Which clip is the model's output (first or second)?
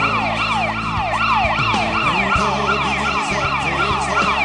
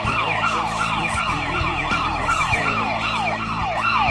second